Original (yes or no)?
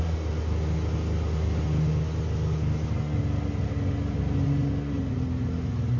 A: yes